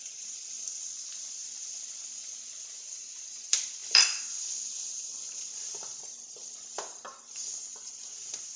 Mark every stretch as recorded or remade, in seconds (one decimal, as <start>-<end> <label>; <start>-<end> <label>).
0.0-8.6 remade